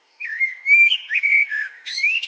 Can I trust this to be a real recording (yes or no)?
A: no